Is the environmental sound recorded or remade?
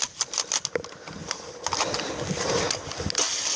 recorded